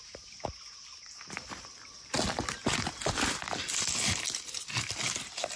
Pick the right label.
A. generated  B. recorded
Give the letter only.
B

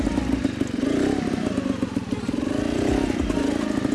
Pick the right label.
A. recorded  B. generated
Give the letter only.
A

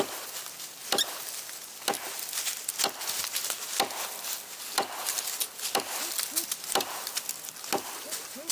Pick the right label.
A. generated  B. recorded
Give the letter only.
B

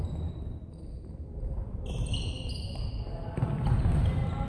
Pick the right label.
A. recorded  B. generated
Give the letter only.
A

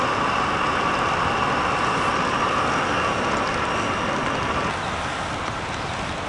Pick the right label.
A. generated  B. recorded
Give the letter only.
B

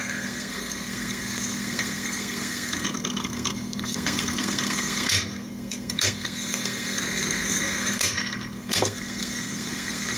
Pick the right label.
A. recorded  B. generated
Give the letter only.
B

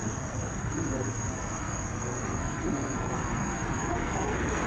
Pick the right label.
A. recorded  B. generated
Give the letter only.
B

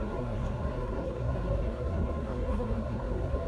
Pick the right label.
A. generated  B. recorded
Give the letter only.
A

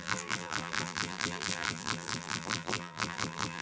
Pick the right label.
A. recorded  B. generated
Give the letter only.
B